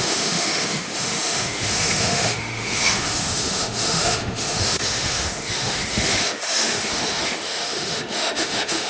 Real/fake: fake